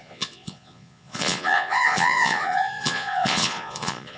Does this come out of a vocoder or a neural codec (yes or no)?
yes